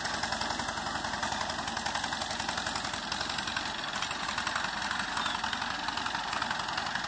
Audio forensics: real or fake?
real